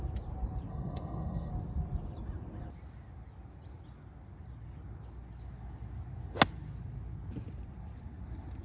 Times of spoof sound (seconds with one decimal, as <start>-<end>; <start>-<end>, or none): 0.7-1.5